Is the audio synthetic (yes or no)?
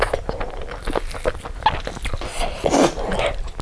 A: no